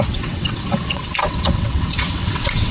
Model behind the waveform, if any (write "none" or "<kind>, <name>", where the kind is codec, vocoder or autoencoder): vocoder, WaveNeXt